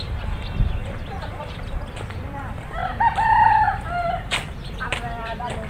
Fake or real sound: fake